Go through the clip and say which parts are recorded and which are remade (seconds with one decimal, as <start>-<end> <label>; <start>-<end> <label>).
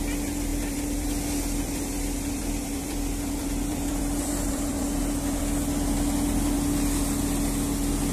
0.0-0.5 recorded; 0.5-5.4 remade; 5.4-8.1 recorded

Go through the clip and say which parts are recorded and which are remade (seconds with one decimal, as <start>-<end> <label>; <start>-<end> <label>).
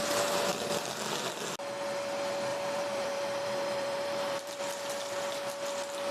0.0-2.5 recorded; 2.5-4.6 remade; 4.6-6.1 recorded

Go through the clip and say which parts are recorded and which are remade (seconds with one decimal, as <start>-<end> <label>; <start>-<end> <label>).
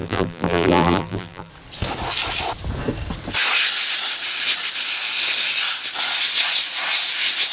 0.0-1.5 remade; 1.5-7.5 recorded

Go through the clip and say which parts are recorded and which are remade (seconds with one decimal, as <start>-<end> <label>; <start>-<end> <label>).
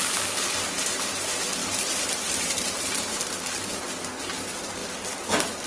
0.0-1.6 recorded; 1.6-3.2 remade; 3.2-5.7 recorded